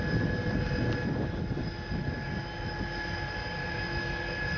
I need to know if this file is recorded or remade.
recorded